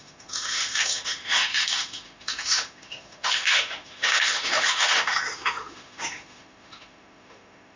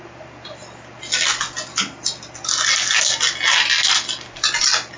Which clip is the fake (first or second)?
first